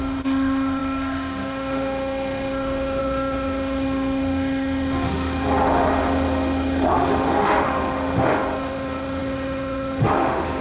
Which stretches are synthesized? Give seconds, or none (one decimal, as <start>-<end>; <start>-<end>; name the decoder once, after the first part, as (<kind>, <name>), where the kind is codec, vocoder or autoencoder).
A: 0.0-10.6 (autoencoder, DAC-VAE)